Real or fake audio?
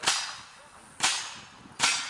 real